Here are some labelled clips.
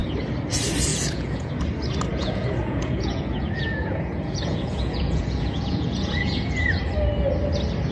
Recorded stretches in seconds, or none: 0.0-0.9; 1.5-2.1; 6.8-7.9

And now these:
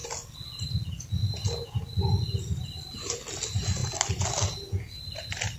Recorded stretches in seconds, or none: 0.0-5.6

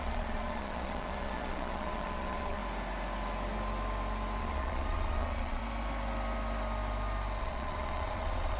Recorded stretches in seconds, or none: 2.6-4.4; 5.6-7.4

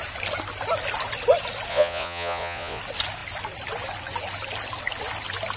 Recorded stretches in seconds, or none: 0.0-1.7; 2.8-5.6